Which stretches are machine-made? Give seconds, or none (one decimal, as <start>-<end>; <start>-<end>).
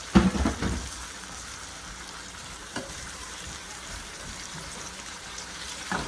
2.4-6.1